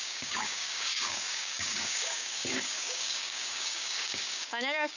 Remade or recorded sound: remade